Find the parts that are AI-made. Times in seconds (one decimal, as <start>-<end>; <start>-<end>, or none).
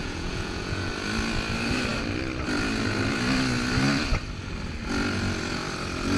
0.0-0.9